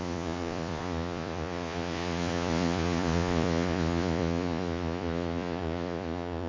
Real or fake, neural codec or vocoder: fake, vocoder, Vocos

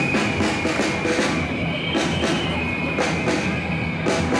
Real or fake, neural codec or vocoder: real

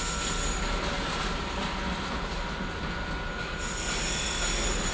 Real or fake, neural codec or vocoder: real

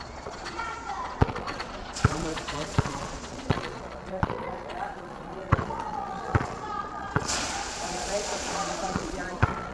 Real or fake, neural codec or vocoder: fake, vocoder, Vocos